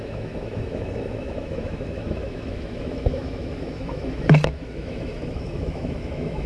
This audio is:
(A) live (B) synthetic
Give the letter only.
B